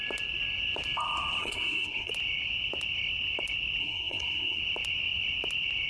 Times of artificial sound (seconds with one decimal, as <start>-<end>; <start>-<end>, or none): 1.4-2.1; 3.8-4.6